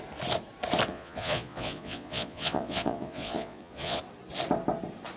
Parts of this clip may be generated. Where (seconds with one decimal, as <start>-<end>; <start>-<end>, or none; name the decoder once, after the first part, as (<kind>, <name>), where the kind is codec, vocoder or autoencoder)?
0.9-4.0 (vocoder, Vocos)